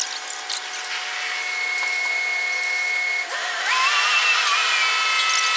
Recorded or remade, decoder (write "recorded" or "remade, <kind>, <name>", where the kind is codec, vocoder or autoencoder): recorded